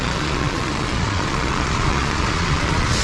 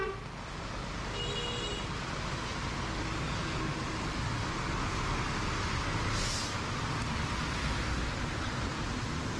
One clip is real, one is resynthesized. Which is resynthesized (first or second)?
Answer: first